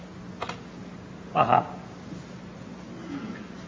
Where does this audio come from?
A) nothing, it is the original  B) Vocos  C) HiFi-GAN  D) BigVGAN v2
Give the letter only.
A